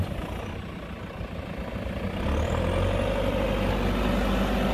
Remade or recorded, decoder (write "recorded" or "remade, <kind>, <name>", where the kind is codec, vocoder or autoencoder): recorded